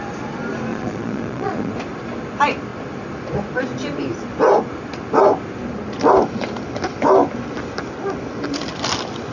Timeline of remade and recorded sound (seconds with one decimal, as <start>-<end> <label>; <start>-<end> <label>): 0.0-0.7 recorded; 0.7-1.7 remade; 1.7-9.3 recorded